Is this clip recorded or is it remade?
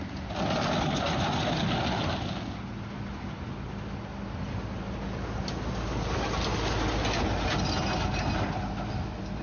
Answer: recorded